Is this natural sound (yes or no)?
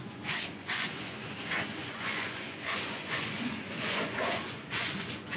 no